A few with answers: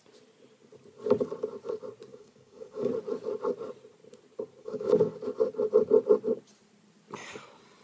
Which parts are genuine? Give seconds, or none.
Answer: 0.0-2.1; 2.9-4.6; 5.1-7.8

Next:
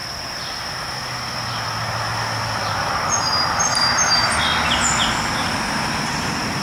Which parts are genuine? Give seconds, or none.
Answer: 0.0-6.6

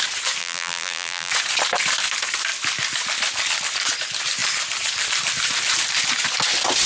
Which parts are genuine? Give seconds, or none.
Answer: 0.0-0.4; 1.3-6.9

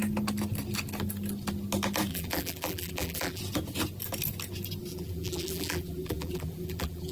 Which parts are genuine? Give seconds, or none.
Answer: 0.0-2.1; 3.4-4.9